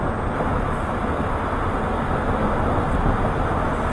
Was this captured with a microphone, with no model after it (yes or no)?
yes